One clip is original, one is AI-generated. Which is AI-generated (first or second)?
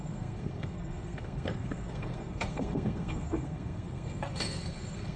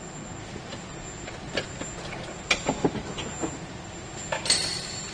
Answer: first